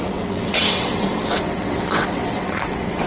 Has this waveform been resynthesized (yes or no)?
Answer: yes